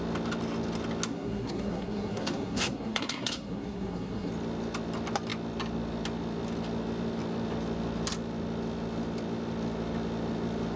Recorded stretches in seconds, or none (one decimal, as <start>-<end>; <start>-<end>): 0.0-1.1; 4.3-10.8